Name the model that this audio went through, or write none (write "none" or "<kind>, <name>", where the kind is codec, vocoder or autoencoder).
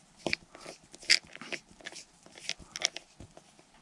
none